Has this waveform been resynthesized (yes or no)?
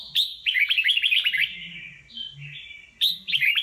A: no